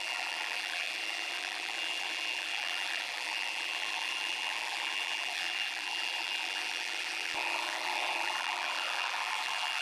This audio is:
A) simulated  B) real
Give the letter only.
A